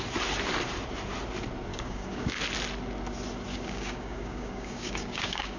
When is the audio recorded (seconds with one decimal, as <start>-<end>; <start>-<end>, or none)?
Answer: 0.0-1.7; 2.4-3.5